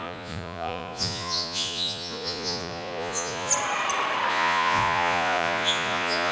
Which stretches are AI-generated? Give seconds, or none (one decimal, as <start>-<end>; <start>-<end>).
0.0-3.5; 4.3-6.3